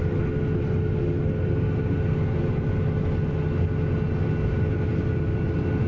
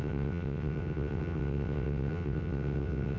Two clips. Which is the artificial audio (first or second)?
second